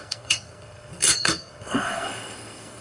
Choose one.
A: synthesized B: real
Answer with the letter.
A